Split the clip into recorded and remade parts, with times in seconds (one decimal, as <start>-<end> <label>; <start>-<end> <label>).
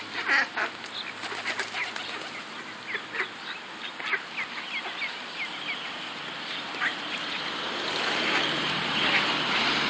0.0-6.9 recorded; 6.9-9.0 remade; 9.0-9.9 recorded